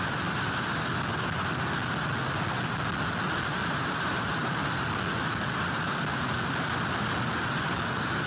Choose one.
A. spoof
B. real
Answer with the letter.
B